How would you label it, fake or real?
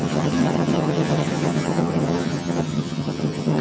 fake